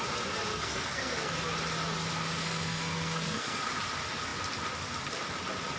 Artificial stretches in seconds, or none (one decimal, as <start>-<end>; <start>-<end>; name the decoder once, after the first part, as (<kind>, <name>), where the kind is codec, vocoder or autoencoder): 0.5-1.3 (codec, SNAC); 2.4-3.6